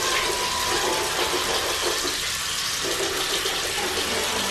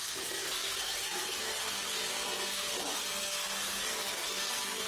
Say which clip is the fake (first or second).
second